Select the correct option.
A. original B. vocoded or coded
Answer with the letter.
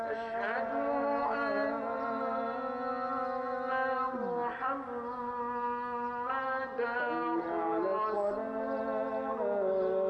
A